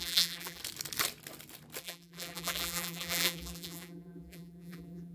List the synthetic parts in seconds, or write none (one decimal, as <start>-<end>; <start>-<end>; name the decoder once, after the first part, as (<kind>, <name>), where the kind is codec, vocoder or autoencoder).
0.0-0.6 (vocoder, BigVGAN v2); 1.8-5.1